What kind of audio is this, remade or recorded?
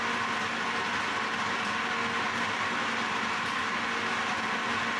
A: recorded